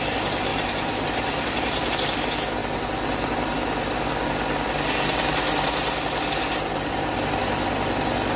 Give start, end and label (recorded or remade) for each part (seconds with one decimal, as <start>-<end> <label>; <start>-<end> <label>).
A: 0.0-0.5 recorded; 0.5-1.9 remade; 1.9-8.4 recorded